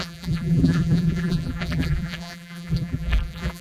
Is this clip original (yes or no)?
no